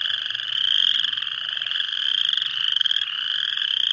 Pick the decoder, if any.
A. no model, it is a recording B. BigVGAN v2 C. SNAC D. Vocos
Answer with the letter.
A